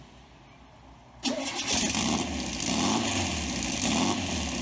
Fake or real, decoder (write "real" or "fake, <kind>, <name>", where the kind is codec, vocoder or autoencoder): real